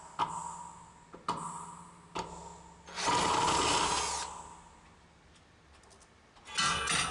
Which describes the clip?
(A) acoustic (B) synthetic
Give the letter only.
A